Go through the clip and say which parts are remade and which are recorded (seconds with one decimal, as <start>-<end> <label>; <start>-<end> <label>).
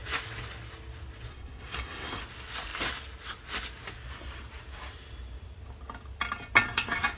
0.0-1.3 recorded; 1.3-2.2 remade; 2.2-7.2 recorded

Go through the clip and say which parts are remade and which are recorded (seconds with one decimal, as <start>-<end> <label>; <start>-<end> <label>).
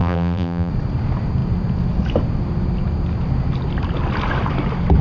0.0-0.7 remade; 0.7-5.0 recorded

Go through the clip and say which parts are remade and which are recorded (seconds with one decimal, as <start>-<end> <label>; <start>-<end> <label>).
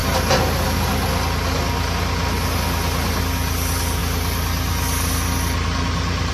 0.0-6.3 recorded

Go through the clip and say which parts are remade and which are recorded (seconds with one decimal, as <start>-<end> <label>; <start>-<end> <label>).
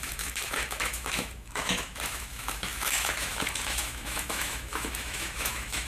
0.0-5.9 remade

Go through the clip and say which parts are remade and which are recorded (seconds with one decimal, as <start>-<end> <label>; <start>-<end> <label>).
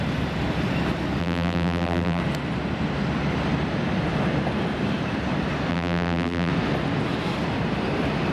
0.0-1.2 recorded; 1.2-2.2 remade; 2.2-5.7 recorded; 5.7-6.5 remade; 6.5-8.3 recorded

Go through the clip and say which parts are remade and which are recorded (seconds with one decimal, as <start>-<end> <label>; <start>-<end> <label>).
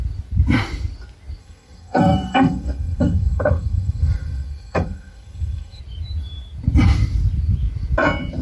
0.0-1.4 recorded; 1.4-5.8 remade; 5.8-8.4 recorded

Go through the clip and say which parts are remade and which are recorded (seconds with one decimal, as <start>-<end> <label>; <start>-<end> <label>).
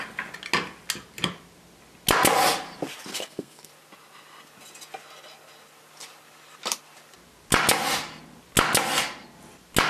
0.0-3.1 recorded; 3.1-3.7 remade; 3.7-9.9 recorded